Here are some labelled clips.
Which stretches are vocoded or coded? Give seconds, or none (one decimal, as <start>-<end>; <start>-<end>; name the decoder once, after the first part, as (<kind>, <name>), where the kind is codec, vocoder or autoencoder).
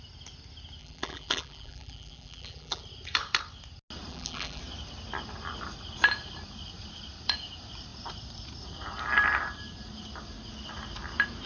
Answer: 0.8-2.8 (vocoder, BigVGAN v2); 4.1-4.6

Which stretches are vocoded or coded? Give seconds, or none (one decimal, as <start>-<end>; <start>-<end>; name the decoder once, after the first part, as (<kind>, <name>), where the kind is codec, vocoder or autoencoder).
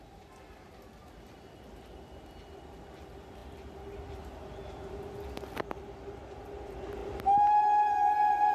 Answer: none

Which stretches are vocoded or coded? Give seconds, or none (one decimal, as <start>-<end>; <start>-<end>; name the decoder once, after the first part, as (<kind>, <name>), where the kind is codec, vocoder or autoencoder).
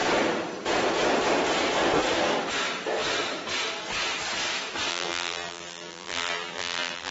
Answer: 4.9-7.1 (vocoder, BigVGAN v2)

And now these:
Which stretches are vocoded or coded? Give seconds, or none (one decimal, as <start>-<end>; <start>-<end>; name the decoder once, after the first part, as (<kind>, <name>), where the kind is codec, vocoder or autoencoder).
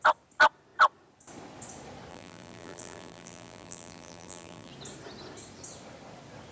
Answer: 2.1-4.7 (vocoder, BigVGAN v2)